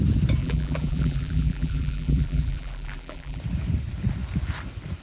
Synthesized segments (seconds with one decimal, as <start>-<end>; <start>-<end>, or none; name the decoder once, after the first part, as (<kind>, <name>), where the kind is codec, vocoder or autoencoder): 0.4-3.4 (vocoder, BigVGAN v2)